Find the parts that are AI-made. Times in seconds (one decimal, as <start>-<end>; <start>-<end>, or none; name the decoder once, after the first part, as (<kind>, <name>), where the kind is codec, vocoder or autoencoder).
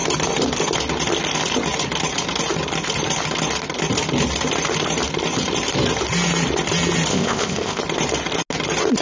7.1-7.8 (codec, ZipCodec)